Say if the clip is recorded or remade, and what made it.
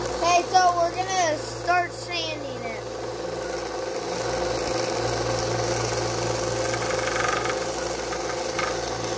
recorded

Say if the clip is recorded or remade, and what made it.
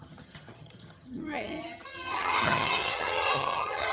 remade, vocoder, HiFi-GAN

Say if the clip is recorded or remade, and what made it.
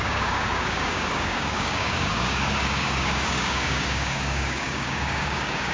remade, codec, DAC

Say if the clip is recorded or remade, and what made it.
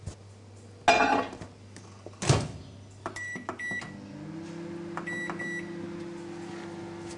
recorded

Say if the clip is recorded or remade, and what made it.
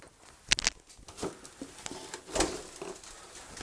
recorded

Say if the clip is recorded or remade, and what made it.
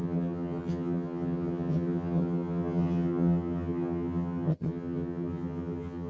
remade, vocoder, HiFi-GAN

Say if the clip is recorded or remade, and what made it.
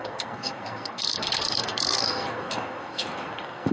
remade, codec, SNAC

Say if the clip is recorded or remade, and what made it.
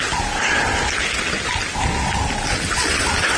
recorded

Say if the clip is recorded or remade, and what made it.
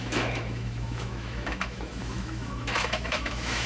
remade, autoencoder, DAC-VAE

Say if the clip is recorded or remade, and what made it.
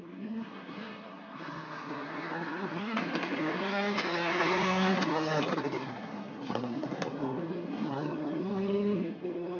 remade, codec, SNAC